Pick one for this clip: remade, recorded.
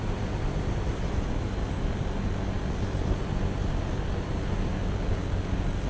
recorded